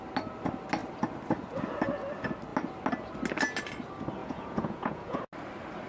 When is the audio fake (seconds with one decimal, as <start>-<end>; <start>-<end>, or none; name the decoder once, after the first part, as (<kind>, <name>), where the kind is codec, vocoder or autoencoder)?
4.2-5.2 (vocoder, Vocos)